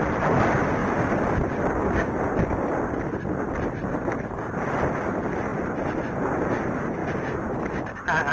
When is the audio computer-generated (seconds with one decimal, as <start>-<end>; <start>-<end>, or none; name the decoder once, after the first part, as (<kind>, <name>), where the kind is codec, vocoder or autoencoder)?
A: none